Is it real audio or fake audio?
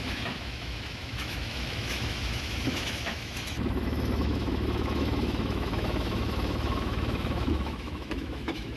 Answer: fake